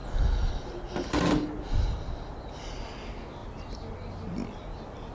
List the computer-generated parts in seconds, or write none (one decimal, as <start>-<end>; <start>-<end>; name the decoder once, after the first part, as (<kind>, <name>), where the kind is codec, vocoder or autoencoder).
3.4-5.1 (vocoder, BigVGAN v2)